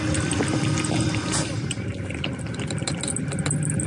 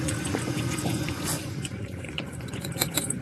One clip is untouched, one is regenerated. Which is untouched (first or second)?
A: first